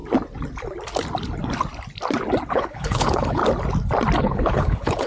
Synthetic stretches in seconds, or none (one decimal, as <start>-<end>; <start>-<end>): 2.5-3.4; 4.2-5.1